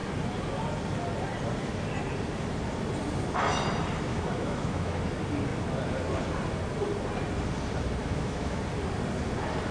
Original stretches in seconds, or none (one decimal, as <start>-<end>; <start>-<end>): 0.0-4.1; 5.0-8.0; 8.6-9.7